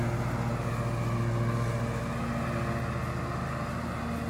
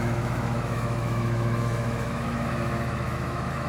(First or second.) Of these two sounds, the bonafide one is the first